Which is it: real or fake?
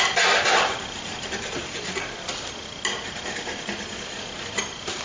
real